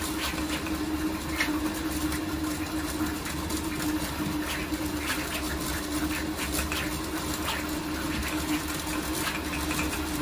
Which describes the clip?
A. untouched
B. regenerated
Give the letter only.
A